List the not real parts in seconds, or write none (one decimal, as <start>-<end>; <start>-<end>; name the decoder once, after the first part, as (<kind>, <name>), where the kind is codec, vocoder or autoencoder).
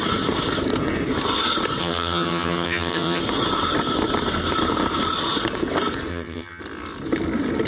1.8-3.2 (vocoder, HiFi-GAN); 6.1-6.6